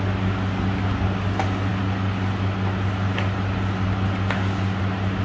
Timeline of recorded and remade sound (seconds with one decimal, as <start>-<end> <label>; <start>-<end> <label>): 0.0-5.2 recorded